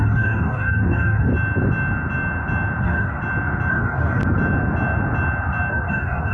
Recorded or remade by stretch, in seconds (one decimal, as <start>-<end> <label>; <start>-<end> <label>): 0.0-1.3 remade; 1.3-2.8 recorded; 2.8-3.2 remade; 3.2-3.7 recorded; 3.7-4.2 remade; 4.2-5.7 recorded; 5.7-6.3 remade